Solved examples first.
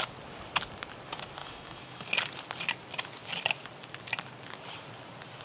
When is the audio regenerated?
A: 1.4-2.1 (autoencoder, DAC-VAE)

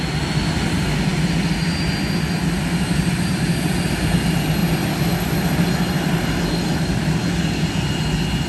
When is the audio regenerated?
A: none